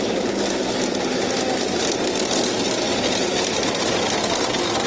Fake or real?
real